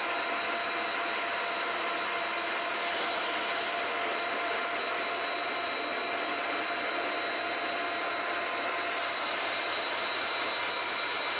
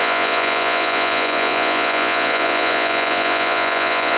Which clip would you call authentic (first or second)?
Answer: first